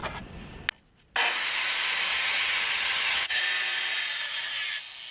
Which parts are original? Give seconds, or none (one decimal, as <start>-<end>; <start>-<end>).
0.0-2.1; 3.4-5.1